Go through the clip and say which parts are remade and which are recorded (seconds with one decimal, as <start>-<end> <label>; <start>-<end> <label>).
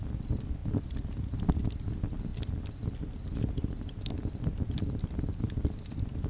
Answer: 0.0-6.3 recorded